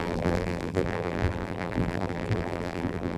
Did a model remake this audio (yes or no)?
yes